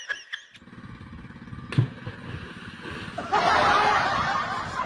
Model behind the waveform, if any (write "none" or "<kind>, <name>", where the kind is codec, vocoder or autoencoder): none